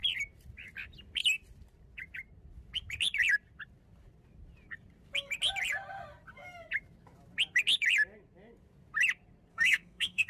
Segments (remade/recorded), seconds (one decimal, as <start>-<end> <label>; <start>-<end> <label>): 0.0-9.5 recorded; 9.5-10.3 remade